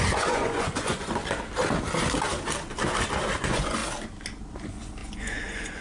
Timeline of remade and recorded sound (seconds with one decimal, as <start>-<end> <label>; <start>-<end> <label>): 0.0-1.2 remade; 1.2-3.4 recorded; 3.4-3.8 remade; 3.8-4.5 recorded; 4.5-5.8 remade